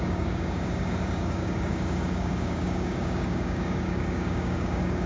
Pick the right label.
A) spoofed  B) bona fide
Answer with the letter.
A